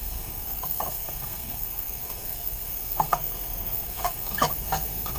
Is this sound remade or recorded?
remade